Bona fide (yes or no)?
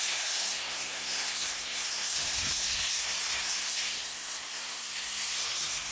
no